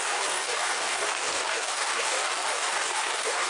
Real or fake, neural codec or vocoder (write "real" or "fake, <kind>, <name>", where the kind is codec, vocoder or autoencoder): fake, codec, DAC